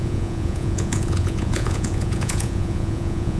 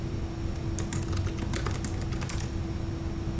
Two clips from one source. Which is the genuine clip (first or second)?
second